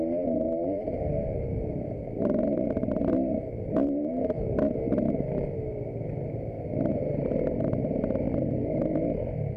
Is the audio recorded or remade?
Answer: remade